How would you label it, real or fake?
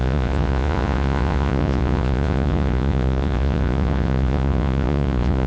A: fake